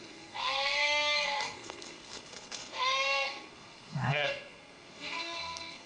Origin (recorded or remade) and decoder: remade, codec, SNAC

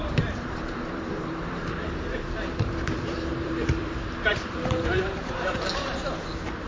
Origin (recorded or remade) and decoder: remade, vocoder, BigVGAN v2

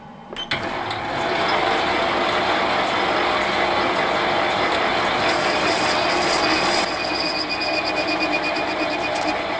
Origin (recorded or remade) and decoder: recorded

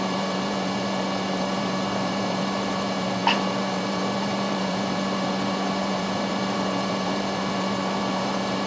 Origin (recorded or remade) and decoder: remade, vocoder, BigVGAN v2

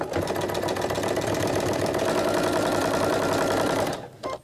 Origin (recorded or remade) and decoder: recorded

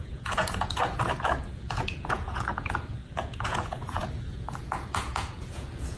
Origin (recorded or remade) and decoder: remade, vocoder, Vocos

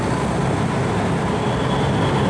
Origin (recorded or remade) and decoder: recorded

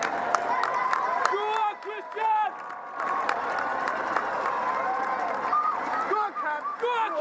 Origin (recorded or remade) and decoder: remade, vocoder, BigVGAN v2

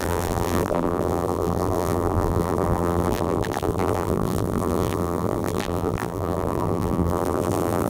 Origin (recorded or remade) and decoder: remade, vocoder, BigVGAN v2